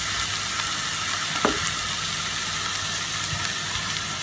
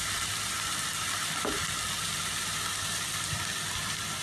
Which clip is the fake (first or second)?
second